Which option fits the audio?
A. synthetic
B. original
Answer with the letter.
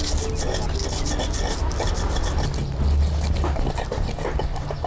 B